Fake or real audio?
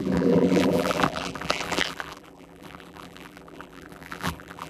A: fake